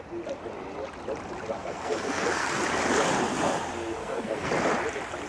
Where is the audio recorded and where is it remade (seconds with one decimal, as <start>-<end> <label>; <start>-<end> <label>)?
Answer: 0.0-1.6 recorded; 1.6-2.6 remade; 2.6-4.0 recorded; 4.0-4.5 remade; 4.5-5.3 recorded